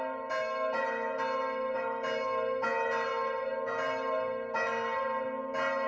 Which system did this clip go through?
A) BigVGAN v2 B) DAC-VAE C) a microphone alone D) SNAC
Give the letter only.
C